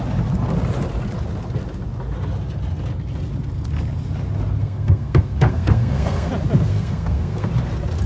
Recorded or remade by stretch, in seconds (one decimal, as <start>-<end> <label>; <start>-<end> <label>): 0.0-4.6 recorded; 4.6-6.3 remade; 6.3-6.7 recorded; 6.7-7.5 remade; 7.5-8.1 recorded